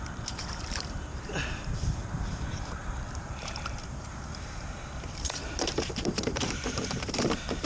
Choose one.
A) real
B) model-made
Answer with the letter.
B